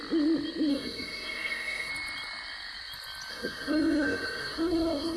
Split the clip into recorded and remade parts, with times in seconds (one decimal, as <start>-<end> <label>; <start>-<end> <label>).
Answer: 0.0-0.7 recorded; 0.7-1.9 remade; 1.9-3.3 recorded; 3.3-5.2 remade